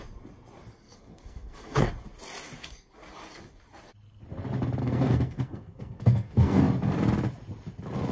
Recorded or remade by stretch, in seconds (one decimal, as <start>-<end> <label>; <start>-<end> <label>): 0.0-0.7 recorded; 0.7-1.9 remade; 1.9-4.8 recorded; 4.8-6.6 remade; 6.6-8.1 recorded